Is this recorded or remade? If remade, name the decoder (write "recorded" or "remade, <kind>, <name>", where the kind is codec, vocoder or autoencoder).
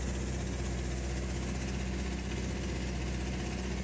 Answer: recorded